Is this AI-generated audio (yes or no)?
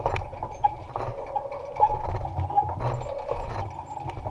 no